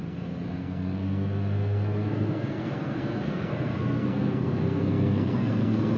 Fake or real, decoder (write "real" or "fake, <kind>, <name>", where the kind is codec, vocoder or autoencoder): fake, codec, SNAC